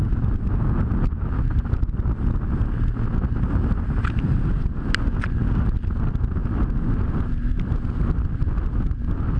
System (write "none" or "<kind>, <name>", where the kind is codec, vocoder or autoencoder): none